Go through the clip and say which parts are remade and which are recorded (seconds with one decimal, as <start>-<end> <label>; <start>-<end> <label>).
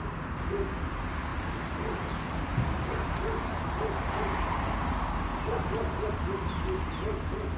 0.0-2.5 recorded; 2.5-3.6 remade; 3.6-5.3 recorded; 5.3-6.8 remade; 6.8-7.6 recorded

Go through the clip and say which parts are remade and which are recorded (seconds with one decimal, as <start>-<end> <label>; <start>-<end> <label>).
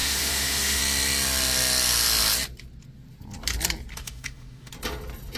0.0-0.8 remade; 0.8-3.9 recorded; 3.9-4.7 remade; 4.7-5.4 recorded